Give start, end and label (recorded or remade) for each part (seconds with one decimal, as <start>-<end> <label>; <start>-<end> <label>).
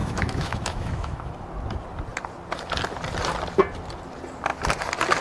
0.0-1.3 remade; 1.3-5.2 recorded